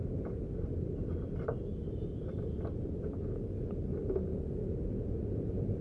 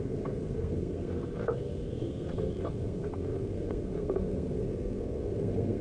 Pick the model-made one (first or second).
second